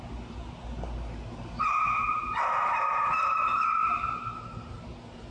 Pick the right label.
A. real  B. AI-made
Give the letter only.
A